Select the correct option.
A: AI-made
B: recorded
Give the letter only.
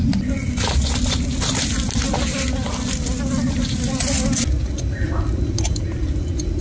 B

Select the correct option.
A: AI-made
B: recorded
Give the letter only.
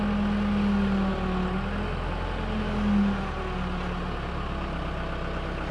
B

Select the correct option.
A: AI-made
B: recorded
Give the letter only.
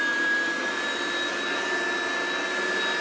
B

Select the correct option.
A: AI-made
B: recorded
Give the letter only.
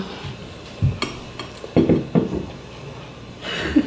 B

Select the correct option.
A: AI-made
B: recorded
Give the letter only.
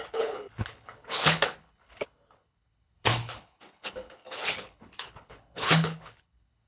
A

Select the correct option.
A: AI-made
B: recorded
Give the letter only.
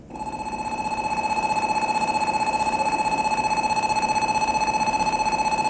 B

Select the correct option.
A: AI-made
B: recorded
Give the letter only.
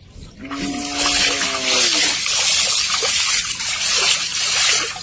B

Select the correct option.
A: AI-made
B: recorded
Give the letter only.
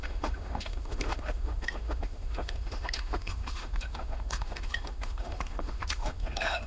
A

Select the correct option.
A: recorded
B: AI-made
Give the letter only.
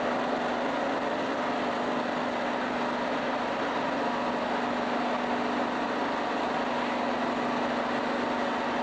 A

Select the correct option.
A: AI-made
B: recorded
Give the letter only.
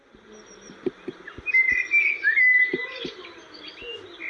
B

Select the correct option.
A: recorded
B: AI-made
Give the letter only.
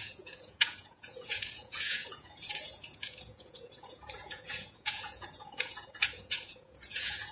B